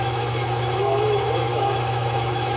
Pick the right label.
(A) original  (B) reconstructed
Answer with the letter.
B